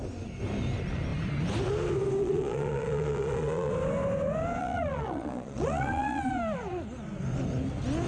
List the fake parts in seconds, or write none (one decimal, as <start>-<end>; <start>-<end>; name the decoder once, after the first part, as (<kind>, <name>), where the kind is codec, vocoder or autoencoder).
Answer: 2.2-3.7 (vocoder, Vocos); 4.6-6.3